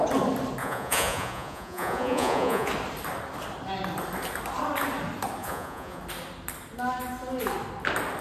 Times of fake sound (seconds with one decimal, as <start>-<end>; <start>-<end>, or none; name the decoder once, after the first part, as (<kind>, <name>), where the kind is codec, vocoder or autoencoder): 0.6-2.7 (vocoder, Vocos); 5.4-6.0

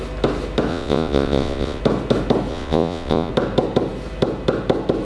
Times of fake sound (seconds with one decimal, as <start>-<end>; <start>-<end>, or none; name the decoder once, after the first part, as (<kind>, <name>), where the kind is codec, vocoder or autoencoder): 0.7-1.8 (vocoder, Vocos); 2.5-3.3

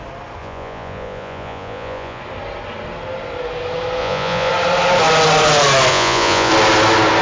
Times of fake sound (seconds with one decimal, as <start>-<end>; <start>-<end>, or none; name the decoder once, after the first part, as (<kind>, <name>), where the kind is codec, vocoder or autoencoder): 0.4-2.2 (vocoder, Vocos); 4.0-4.5; 5.9-6.5

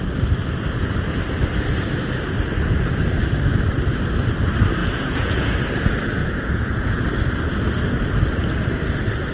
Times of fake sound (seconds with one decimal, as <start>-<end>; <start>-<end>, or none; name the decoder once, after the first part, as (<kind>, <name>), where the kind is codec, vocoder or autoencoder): 4.8-5.5 (vocoder, Vocos); 6.2-7.0

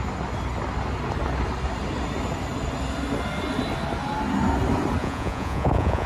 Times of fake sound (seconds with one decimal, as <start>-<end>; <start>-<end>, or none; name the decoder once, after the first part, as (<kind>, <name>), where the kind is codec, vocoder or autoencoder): 5.0-6.1 (vocoder, Vocos)

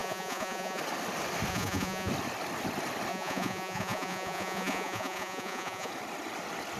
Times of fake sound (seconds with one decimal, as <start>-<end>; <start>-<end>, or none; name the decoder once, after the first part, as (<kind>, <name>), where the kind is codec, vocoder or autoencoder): 0.0-0.8 (vocoder, Vocos); 1.5-2.1; 3.1-5.9

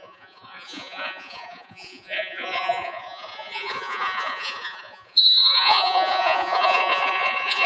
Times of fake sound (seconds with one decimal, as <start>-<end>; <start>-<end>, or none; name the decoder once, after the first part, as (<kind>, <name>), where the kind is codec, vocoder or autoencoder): 0.0-7.7 (vocoder, Vocos)

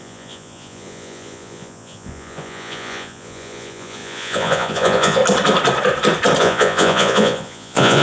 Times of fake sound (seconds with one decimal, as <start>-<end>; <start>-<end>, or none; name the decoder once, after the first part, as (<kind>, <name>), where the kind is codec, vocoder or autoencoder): 0.0-5.2 (vocoder, Vocos); 6.4-8.0